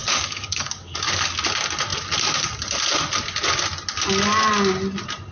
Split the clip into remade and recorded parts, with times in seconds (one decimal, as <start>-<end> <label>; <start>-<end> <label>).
0.0-1.4 remade; 1.4-5.3 recorded